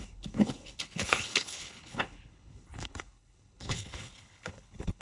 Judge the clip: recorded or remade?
remade